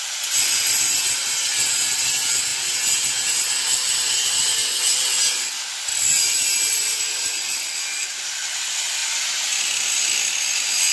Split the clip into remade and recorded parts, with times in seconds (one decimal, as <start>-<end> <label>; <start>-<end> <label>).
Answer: 0.0-10.9 recorded